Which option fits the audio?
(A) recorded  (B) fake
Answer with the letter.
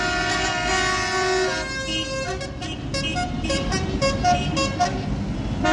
A